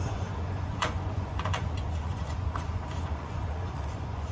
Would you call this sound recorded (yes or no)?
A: no